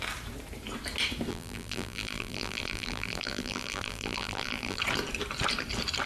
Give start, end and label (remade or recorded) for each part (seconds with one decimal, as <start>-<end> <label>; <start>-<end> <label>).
0.0-1.3 recorded; 1.3-4.8 remade; 4.8-6.1 recorded